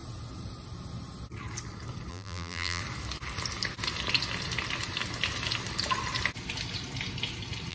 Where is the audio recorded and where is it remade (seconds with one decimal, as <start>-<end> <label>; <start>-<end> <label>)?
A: 0.0-2.1 recorded; 2.1-2.8 remade; 2.8-7.7 recorded

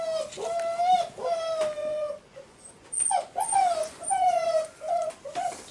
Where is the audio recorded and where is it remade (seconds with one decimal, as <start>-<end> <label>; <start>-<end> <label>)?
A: 0.0-1.8 recorded; 1.8-5.1 remade; 5.1-5.7 recorded